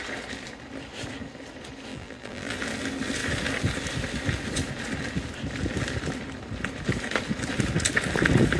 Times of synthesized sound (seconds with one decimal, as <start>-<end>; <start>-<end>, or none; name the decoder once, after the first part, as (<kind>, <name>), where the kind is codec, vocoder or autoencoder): 1.9-2.6 (vocoder, BigVGAN v2)

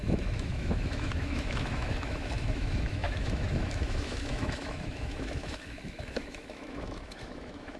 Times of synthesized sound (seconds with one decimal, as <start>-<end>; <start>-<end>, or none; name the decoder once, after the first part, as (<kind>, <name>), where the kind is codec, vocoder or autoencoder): 0.0-7.8 (autoencoder, DAC-VAE)

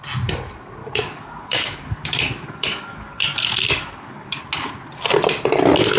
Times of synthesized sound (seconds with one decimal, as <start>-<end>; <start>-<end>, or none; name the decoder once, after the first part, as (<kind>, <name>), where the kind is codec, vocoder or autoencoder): 0.8-4.4 (codec, DAC)

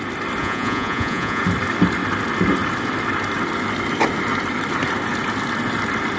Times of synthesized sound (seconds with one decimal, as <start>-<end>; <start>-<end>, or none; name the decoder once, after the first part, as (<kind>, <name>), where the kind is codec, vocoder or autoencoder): 0.4-1.4 (vocoder, Vocos)

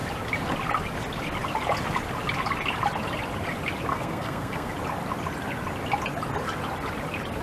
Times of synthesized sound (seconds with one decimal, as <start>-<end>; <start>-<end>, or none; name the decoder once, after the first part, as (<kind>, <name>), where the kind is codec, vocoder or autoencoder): 3.9-4.7 (codec, SNAC)

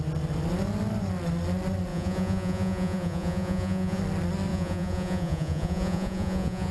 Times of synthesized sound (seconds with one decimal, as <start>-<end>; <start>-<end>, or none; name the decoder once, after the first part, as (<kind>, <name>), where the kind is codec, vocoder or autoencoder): 1.9-4.0 (vocoder, Vocos); 4.5-6.7

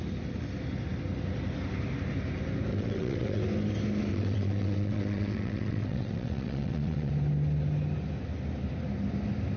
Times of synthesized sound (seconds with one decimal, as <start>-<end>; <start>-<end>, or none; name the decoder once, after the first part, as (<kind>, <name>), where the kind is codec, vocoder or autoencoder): 2.7-3.4 (vocoder, WaveNeXt); 4.1-7.1

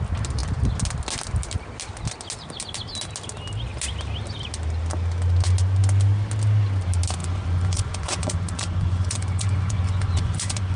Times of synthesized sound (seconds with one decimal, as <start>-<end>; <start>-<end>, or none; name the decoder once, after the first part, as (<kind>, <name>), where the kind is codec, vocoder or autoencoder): 7.2-10.8 (vocoder, Vocos)